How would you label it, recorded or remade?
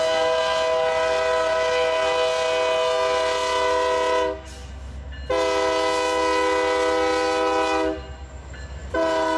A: recorded